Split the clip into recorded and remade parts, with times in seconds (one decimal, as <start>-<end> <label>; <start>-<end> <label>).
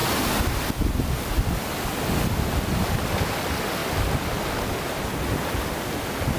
0.0-6.4 recorded